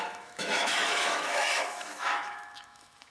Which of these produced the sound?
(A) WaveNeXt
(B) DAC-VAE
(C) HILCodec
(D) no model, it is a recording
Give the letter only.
B